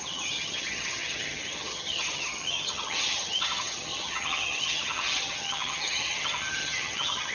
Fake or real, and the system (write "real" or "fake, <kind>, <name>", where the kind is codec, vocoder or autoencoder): fake, vocoder, HiFi-GAN